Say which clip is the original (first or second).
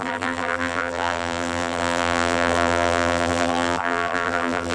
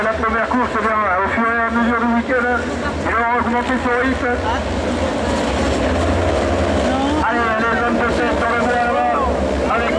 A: second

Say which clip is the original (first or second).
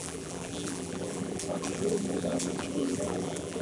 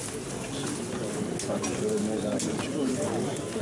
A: second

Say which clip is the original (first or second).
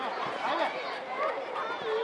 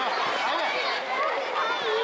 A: second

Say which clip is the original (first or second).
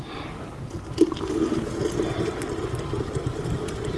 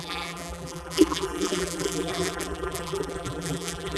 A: first